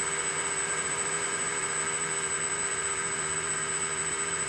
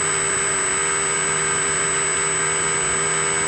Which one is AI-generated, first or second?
first